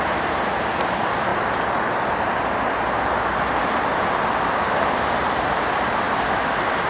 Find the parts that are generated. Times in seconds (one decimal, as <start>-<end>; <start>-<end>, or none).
none